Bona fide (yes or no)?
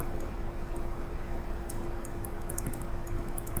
no